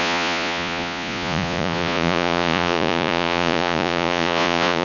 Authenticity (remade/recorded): remade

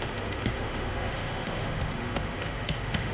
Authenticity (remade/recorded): remade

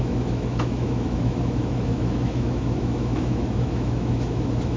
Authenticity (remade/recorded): remade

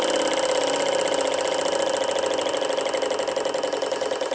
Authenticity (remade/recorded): recorded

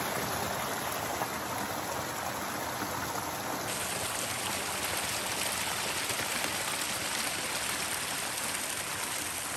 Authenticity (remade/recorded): recorded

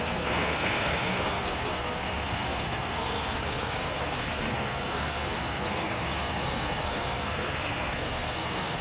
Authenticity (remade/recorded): remade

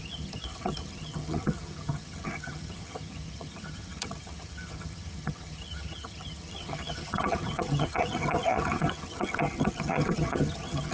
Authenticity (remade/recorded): remade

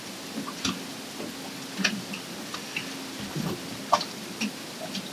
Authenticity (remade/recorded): recorded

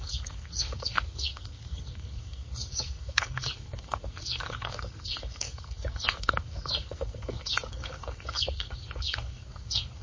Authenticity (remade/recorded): remade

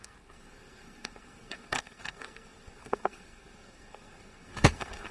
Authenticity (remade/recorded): remade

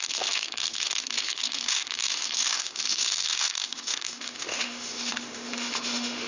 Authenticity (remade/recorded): remade